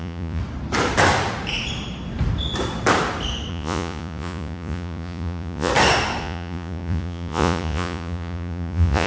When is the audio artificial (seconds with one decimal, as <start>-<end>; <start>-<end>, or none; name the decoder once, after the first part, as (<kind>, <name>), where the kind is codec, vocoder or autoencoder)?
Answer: 0.0-0.4 (vocoder, Vocos); 3.5-5.7; 6.2-9.1